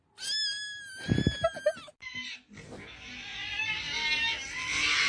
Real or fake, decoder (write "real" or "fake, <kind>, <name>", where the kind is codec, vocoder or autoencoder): real